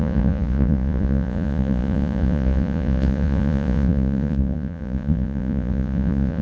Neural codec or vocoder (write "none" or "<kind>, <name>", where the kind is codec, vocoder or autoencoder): vocoder, Vocos